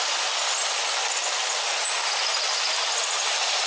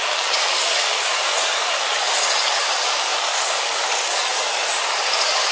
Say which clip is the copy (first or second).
second